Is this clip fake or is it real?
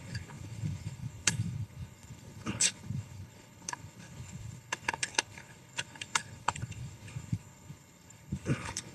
fake